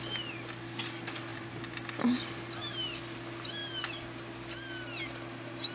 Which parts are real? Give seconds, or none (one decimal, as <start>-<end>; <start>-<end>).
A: 0.0-5.7